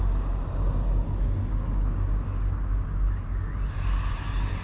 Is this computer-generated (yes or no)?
no